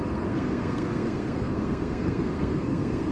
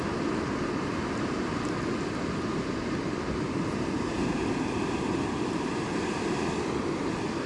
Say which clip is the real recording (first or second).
second